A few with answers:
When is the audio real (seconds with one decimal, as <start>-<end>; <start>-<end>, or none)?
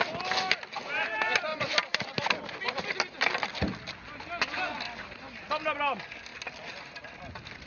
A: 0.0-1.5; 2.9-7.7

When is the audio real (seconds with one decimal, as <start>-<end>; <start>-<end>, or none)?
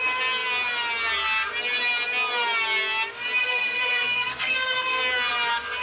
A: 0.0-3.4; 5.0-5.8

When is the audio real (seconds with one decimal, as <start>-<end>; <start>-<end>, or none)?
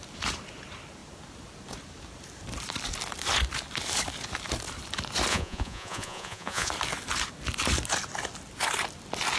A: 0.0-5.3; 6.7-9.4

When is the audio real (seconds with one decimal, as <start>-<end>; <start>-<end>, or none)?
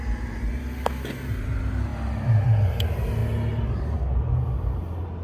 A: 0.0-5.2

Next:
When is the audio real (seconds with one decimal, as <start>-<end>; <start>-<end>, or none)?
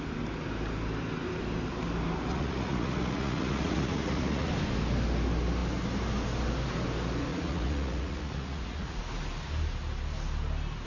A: 0.0-2.3; 4.5-7.3; 9.0-10.9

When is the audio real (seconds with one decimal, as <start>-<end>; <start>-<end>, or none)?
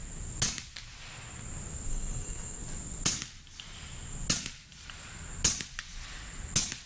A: 0.0-1.9; 2.6-6.9